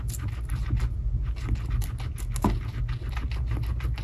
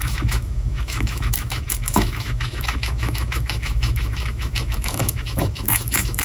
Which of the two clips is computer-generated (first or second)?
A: second